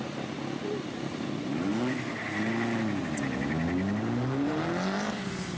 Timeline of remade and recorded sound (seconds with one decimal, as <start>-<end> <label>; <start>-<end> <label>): 0.0-5.6 recorded